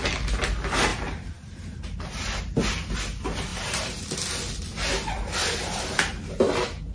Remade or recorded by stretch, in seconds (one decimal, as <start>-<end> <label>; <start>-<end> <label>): 0.0-0.9 recorded; 0.9-2.4 remade; 2.4-3.5 recorded; 3.5-4.3 remade; 4.3-5.4 recorded; 5.4-6.1 remade; 6.1-6.9 recorded